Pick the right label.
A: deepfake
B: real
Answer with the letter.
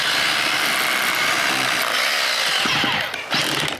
B